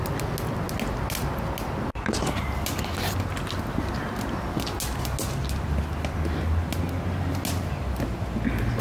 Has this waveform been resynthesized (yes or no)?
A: no